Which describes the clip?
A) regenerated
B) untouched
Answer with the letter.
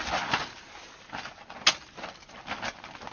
B